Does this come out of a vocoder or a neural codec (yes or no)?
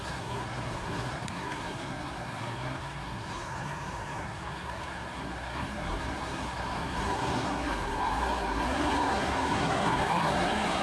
yes